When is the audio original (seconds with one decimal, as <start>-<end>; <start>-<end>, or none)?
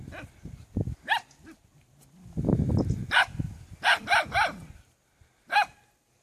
0.0-6.2